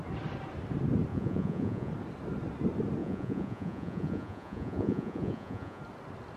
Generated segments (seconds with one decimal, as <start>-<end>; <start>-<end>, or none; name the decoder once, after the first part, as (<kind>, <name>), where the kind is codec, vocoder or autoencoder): 1.1-1.9 (vocoder, Vocos); 3.0-5.8